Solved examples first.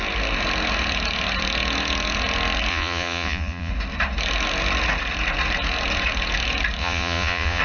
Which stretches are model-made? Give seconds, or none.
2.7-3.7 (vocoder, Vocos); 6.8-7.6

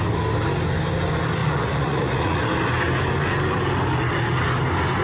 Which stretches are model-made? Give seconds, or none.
1.4-2.4 (vocoder, Vocos)

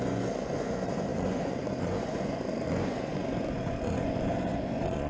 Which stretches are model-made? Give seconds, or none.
0.0-5.1 (vocoder, Vocos)

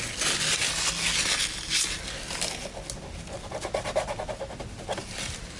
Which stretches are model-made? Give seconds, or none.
none

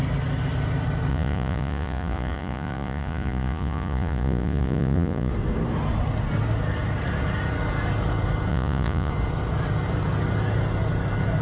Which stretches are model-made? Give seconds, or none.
1.1-5.3 (vocoder, Vocos); 8.5-9.1

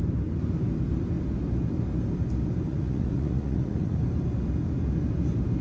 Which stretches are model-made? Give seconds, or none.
2.7-4.0 (vocoder, Vocos)